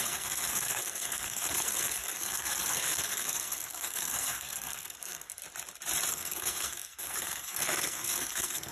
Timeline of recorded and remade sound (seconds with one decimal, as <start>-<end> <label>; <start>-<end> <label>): 0.0-5.4 remade; 5.4-6.1 recorded; 6.1-8.7 remade